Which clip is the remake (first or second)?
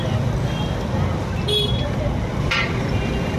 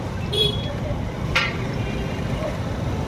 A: second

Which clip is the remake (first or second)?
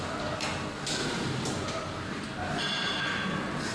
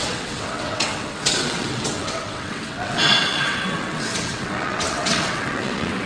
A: second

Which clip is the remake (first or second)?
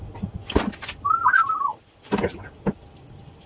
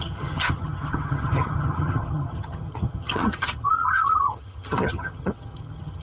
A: second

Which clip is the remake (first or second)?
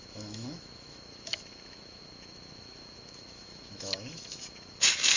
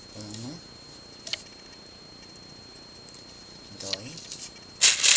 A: first